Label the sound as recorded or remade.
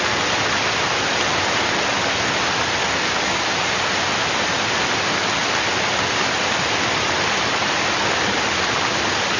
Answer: recorded